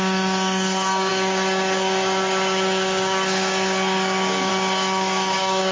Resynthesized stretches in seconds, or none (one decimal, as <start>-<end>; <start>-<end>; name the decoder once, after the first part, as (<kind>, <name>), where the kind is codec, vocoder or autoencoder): 0.0-5.7 (codec, DAC)